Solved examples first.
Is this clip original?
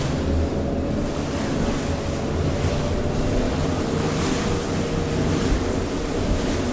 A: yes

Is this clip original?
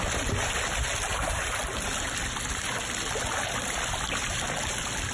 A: yes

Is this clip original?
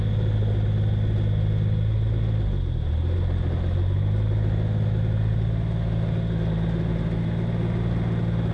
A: yes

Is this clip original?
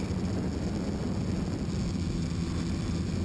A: yes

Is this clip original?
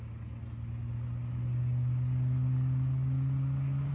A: yes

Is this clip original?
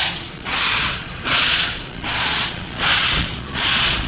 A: no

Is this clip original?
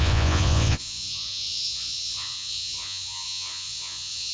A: no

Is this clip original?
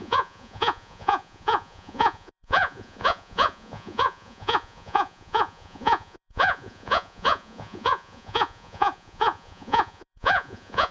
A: no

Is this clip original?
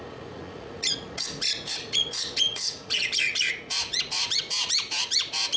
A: no